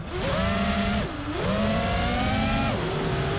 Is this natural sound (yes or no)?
yes